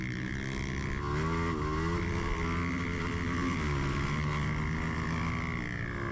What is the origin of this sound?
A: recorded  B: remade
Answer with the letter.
A